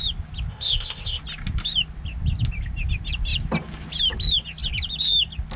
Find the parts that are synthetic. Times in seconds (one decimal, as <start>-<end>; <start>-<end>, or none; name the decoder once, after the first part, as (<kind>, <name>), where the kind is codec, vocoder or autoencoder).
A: 0.5-1.2 (codec, ZipCodec)